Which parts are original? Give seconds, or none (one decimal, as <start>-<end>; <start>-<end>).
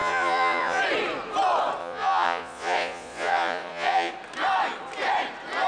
0.8-1.8; 4.1-5.7